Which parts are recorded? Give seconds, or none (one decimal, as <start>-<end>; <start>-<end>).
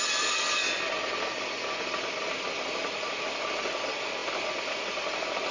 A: 0.0-5.5